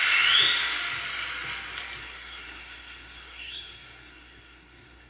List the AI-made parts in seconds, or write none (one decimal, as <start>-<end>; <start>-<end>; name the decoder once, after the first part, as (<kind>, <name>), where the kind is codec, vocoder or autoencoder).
2.0-5.1 (codec, SNAC)